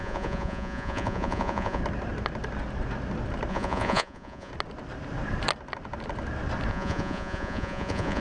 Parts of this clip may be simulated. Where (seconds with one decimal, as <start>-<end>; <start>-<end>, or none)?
0.0-1.8; 3.5-4.5; 6.7-8.2